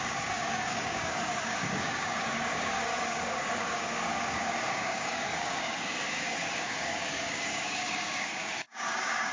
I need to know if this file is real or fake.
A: fake